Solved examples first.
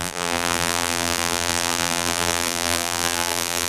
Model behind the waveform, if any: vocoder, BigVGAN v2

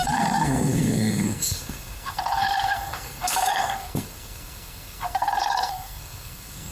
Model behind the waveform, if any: codec, SNAC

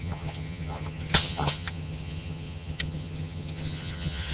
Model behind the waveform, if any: vocoder, HiFi-GAN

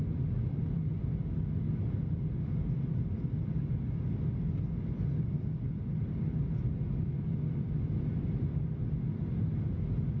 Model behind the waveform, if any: none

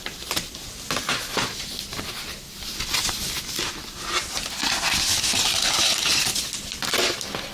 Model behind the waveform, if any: none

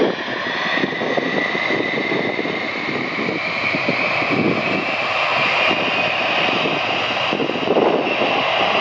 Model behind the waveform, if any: none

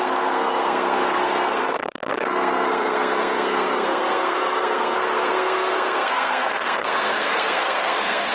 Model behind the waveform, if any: codec, SNAC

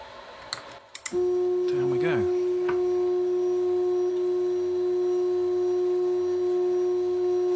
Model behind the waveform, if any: none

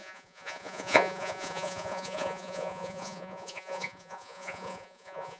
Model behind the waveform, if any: vocoder, Vocos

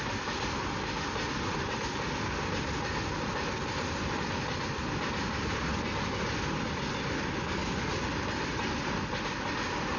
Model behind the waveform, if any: none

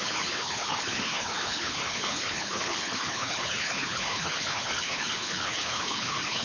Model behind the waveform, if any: codec, HILCodec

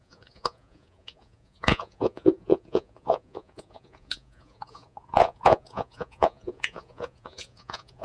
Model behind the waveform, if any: vocoder, Vocos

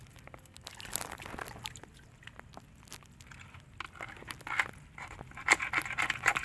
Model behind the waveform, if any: none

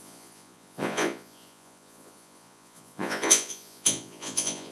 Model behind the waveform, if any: vocoder, Vocos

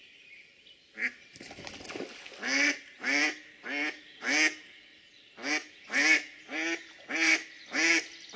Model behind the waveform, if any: none